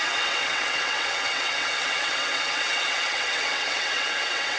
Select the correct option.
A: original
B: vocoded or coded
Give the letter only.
B